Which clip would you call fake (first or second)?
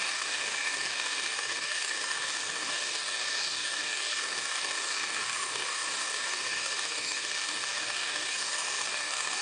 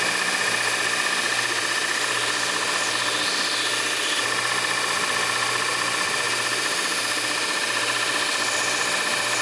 first